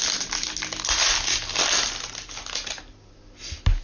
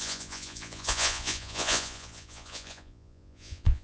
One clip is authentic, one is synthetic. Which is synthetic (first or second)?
second